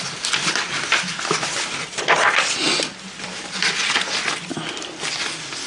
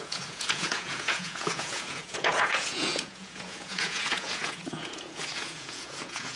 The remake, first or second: second